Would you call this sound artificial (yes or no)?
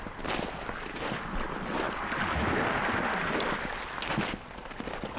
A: no